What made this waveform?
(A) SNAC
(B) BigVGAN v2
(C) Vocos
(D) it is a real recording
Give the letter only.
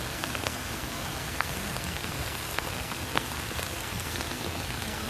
A